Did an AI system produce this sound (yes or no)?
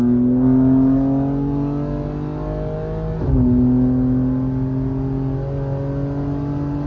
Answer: no